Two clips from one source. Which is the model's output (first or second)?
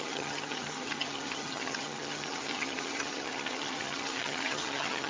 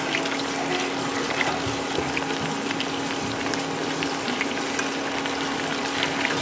first